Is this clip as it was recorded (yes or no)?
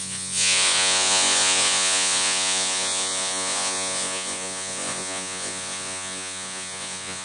no